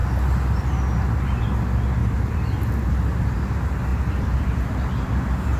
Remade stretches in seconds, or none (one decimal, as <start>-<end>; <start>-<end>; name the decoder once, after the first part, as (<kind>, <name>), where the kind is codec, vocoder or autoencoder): 2.0-2.9 (vocoder, BigVGAN v2)